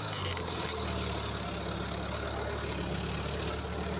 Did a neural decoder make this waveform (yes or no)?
no